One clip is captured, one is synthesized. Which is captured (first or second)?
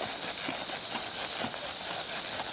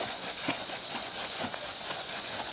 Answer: first